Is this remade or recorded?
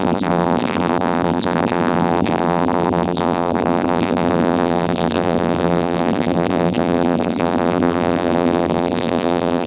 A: remade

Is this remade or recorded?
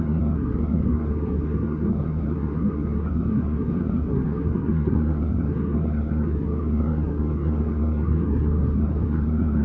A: remade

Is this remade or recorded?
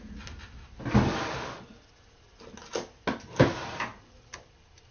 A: recorded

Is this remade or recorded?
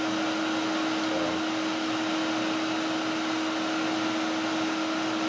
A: recorded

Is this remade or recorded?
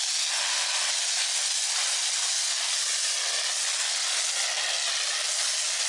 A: recorded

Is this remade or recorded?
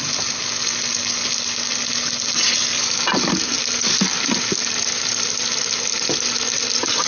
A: recorded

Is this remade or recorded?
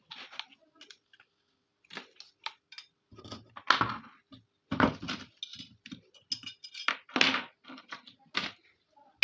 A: recorded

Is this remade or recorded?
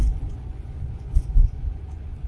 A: remade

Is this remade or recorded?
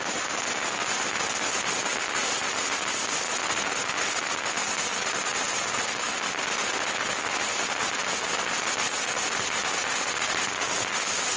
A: recorded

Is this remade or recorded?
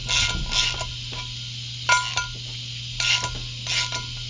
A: recorded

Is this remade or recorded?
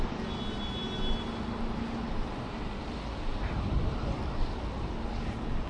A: recorded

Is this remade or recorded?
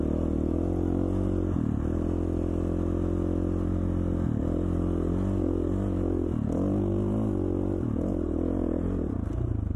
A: recorded